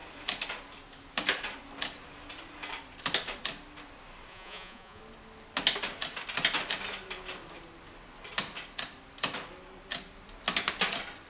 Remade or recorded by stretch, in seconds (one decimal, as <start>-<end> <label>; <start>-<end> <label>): 0.0-4.3 recorded; 4.3-5.0 remade; 5.0-11.3 recorded